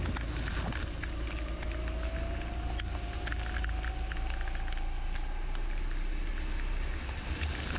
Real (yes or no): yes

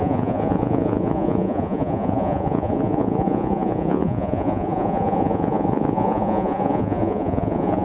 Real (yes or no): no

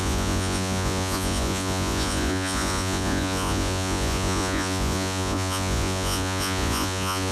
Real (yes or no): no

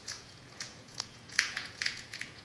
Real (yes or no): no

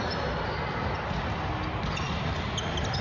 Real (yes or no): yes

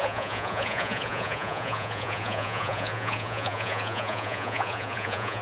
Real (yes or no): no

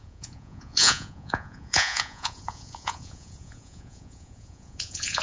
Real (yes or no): no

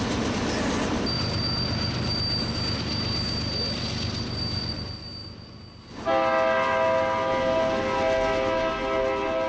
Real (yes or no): yes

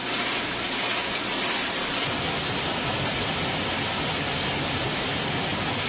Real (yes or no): yes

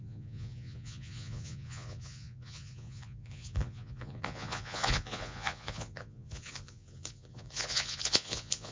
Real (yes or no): no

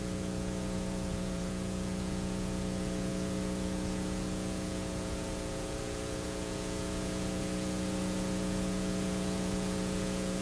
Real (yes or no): no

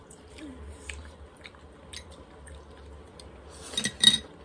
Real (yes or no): yes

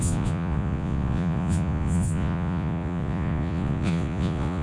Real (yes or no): no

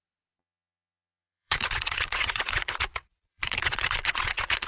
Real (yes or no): no